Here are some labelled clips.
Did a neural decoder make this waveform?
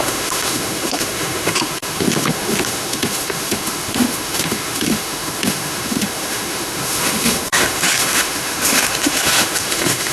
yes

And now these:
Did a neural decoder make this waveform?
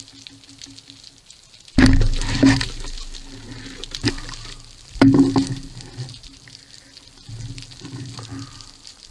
no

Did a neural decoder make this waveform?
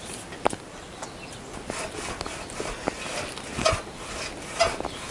no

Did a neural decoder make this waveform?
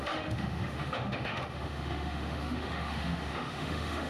yes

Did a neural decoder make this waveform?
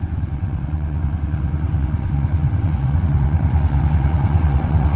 yes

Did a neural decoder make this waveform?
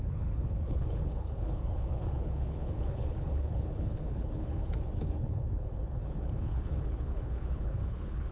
yes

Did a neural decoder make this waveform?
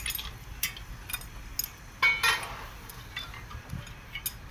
no